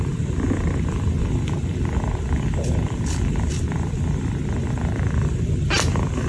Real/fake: fake